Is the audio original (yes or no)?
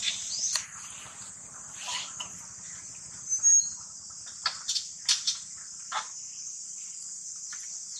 yes